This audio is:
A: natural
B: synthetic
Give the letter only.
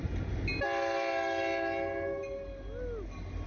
A